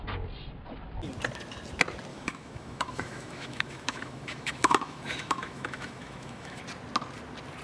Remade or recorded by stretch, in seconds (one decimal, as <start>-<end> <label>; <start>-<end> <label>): 0.0-2.1 recorded; 2.1-6.6 remade; 6.6-7.6 recorded